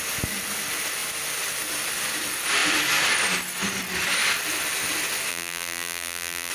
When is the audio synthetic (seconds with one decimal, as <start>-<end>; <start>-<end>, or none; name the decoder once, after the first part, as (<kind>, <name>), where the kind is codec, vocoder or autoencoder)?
5.3-6.5 (vocoder, BigVGAN v2)